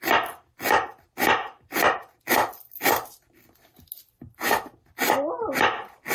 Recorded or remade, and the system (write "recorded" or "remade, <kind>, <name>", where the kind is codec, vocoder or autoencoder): recorded